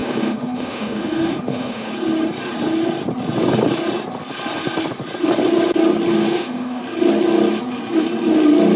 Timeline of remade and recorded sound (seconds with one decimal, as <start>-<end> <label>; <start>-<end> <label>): 0.0-1.9 remade; 1.9-6.1 recorded; 6.1-6.8 remade; 6.8-8.8 recorded